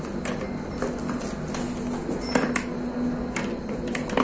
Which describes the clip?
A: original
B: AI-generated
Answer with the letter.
A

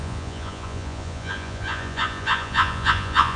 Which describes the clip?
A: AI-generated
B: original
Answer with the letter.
A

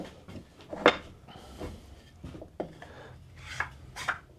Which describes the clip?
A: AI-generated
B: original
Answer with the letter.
B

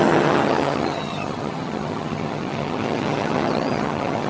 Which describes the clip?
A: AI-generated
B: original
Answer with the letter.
A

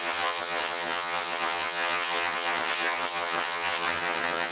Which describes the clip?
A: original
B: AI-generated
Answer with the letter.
B